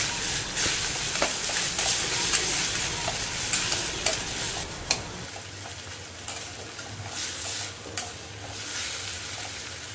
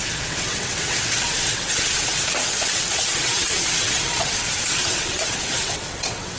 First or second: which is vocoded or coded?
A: second